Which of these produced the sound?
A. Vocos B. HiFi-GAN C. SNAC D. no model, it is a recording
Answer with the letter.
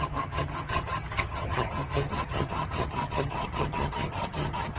B